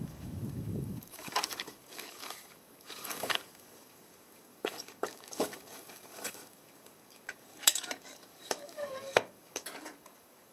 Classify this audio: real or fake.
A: fake